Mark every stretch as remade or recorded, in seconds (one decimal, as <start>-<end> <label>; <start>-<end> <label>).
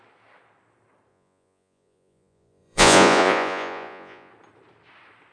0.0-1.1 recorded; 1.1-4.3 remade; 4.3-5.3 recorded